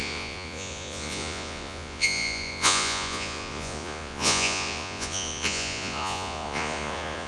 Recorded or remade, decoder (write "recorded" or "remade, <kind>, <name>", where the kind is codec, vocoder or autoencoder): remade, vocoder, Vocos